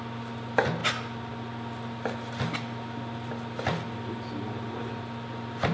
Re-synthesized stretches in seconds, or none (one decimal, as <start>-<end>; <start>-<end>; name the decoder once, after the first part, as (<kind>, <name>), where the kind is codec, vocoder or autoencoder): none